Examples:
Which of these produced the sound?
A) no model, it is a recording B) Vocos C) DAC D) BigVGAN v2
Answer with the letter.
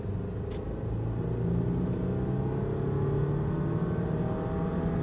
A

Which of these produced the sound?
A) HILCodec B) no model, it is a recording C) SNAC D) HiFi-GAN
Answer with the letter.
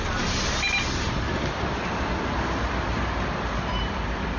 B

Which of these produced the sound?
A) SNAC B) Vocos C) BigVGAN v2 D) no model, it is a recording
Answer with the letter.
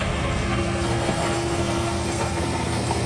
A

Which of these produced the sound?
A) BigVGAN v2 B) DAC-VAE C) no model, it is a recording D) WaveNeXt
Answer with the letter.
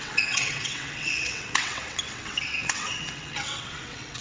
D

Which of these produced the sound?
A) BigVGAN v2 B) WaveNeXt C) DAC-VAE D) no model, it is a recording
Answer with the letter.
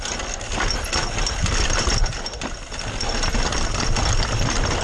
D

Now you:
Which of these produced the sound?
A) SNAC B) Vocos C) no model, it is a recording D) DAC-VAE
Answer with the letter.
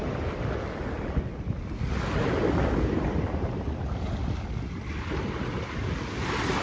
C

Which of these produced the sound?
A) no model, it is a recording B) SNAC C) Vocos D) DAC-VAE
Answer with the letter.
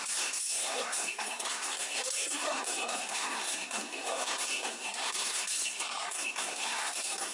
B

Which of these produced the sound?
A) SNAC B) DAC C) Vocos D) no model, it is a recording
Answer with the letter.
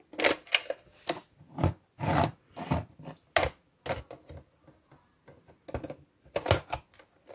D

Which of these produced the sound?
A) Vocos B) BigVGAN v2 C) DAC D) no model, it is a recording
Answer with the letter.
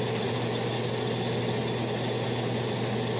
D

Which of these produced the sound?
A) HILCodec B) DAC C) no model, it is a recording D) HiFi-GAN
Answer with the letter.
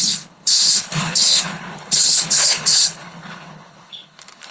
A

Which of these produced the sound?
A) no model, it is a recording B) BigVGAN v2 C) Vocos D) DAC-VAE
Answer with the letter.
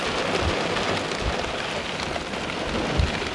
A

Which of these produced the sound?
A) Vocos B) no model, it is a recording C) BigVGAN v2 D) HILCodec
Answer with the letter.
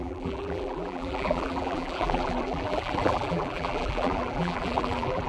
C